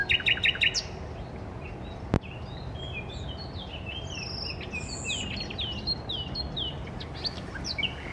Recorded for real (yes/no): yes